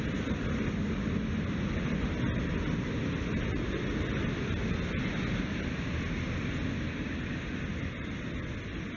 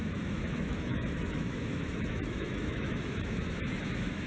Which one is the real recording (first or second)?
first